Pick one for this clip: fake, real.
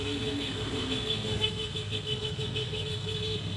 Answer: fake